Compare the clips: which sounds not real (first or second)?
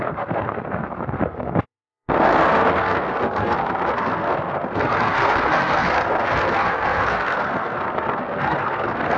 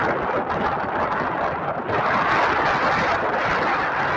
first